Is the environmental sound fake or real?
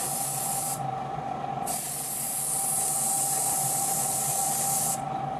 real